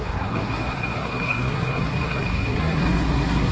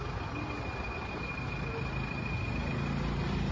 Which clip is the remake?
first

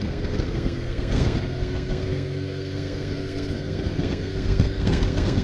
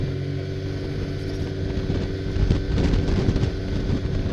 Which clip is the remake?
first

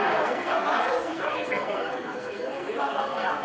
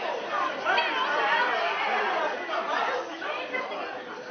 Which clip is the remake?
first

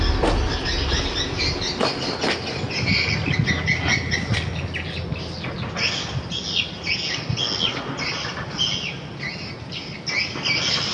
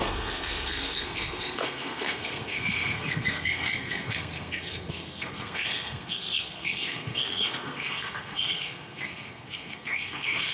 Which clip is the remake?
second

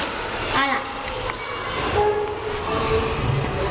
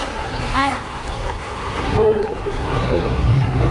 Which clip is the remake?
second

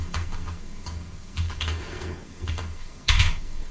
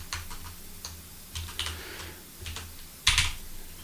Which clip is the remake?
first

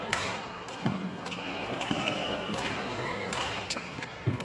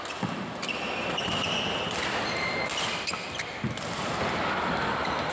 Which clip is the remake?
first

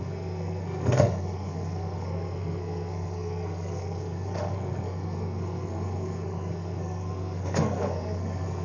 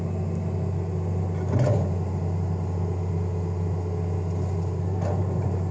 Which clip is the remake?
first